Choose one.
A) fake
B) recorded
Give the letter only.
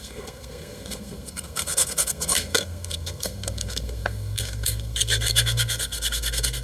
A